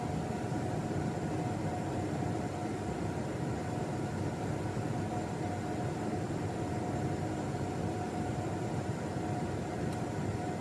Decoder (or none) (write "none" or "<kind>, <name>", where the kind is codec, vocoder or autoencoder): none